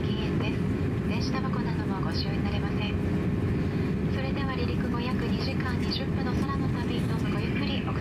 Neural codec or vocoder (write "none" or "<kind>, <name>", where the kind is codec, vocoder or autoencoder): none